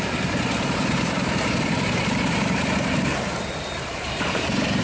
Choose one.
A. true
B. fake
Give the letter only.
B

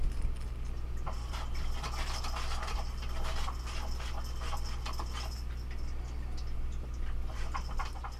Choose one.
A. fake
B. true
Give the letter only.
B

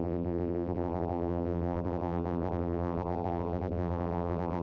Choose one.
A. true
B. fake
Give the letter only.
B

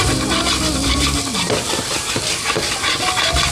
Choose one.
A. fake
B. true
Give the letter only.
A